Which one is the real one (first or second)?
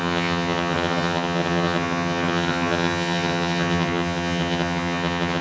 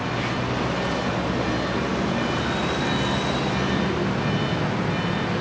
second